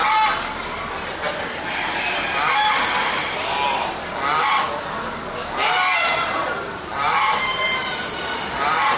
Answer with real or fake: real